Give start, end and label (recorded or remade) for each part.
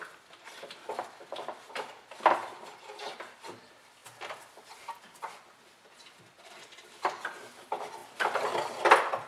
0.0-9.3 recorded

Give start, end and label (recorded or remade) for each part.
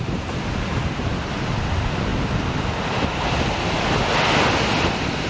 0.0-5.3 recorded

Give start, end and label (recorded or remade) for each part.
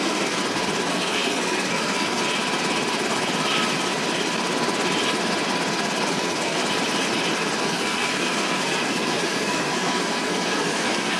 0.0-0.4 remade; 0.4-0.9 recorded; 0.9-2.2 remade; 2.2-6.1 recorded; 6.1-6.6 remade; 6.6-7.6 recorded; 7.6-11.2 remade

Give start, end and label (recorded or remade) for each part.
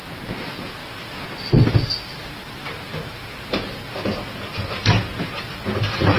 0.0-0.8 recorded; 0.8-1.4 remade; 1.4-2.9 recorded; 2.9-4.5 remade; 4.5-6.2 recorded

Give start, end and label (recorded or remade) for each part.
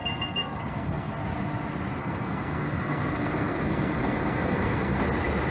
0.0-1.1 remade; 1.1-2.0 recorded; 2.0-5.0 remade; 5.0-5.5 recorded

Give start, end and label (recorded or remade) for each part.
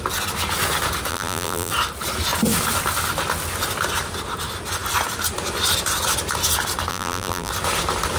0.0-1.1 recorded; 1.1-1.7 remade; 1.7-6.9 recorded; 6.9-7.5 remade; 7.5-8.2 recorded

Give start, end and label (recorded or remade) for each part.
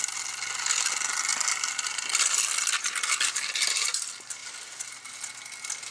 0.0-5.9 recorded